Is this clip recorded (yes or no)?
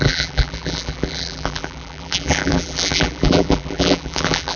no